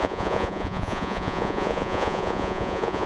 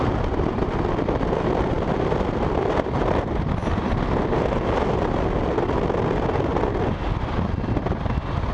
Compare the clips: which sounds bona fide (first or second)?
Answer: second